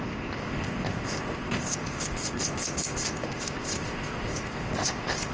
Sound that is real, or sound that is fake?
fake